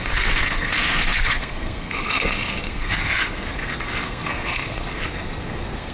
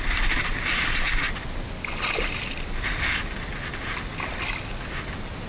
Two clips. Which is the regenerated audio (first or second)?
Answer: first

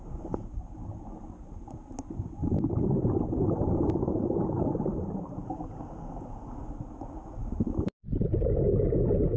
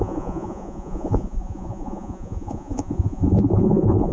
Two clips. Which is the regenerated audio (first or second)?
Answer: second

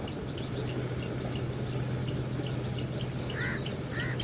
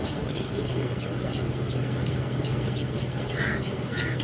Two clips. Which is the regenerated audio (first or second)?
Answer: second